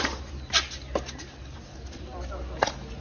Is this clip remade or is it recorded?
recorded